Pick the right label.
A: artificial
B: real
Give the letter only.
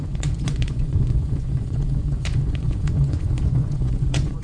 A